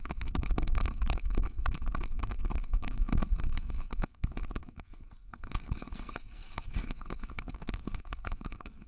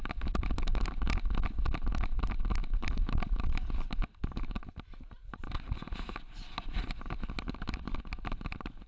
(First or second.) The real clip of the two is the second